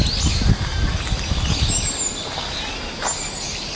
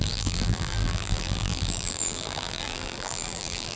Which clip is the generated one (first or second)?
second